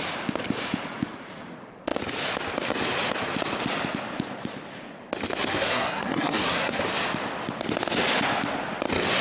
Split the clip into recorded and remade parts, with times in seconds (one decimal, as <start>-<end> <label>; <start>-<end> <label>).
0.0-5.4 recorded; 5.4-6.8 remade; 6.8-9.2 recorded